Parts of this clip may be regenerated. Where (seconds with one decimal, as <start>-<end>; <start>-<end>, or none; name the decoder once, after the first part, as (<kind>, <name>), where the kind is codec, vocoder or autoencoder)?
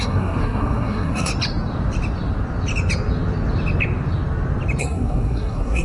0.0-1.3 (codec, SNAC); 4.8-5.8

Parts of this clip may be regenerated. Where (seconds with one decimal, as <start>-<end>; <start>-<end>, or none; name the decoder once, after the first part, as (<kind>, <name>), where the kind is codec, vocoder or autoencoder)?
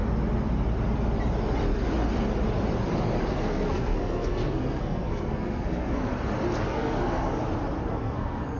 3.3-6.0 (codec, SNAC); 6.6-7.4; 7.9-8.6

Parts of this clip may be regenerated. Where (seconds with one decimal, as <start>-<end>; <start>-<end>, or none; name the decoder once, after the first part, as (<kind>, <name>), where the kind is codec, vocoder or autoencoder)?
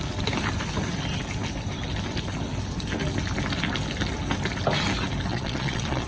5.3-6.1 (vocoder, Vocos)